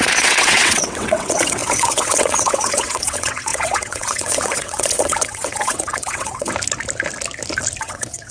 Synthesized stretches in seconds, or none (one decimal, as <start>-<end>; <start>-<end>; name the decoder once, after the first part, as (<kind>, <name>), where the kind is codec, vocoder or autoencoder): 0.0-6.5 (vocoder, WaveNeXt); 7.8-8.3